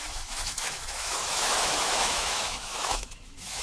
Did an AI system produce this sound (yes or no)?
yes